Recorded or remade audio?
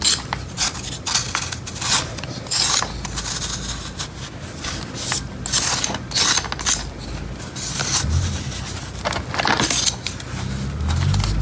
recorded